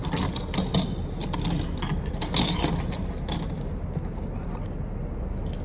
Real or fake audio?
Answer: real